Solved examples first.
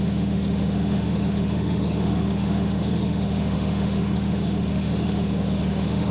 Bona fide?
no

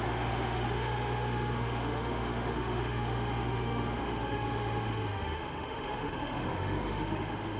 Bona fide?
no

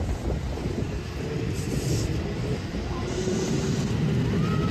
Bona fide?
yes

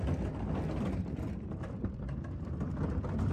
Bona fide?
yes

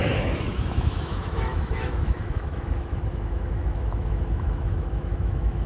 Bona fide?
no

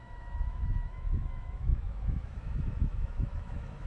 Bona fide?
no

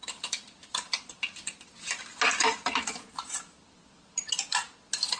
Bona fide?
yes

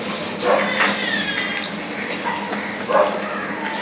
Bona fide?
yes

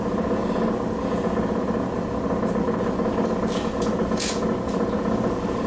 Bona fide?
yes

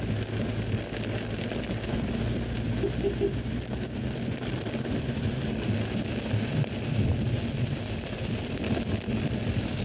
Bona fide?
yes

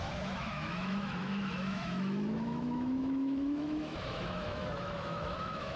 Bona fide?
no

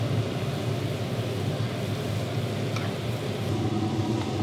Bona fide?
yes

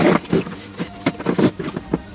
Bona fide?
yes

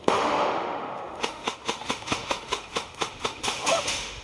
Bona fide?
no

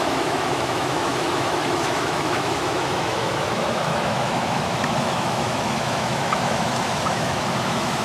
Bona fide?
no